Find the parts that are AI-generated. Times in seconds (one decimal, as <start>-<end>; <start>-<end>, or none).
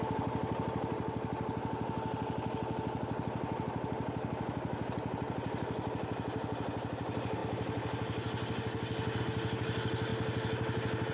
none